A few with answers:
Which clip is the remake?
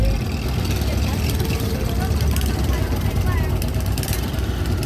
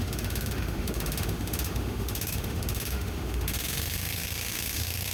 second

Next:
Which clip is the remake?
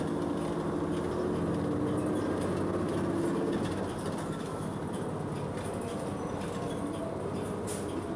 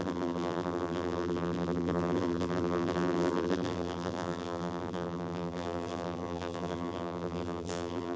second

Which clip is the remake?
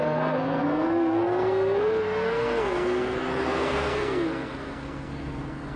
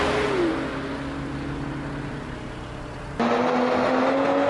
first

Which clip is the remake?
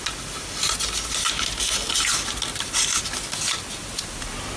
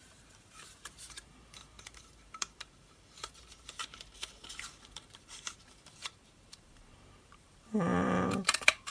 second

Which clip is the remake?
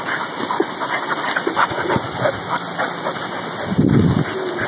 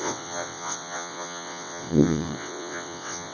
second